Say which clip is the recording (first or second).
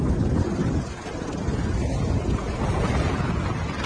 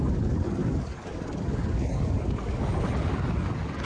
first